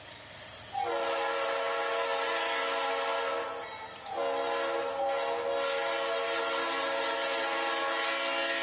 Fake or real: real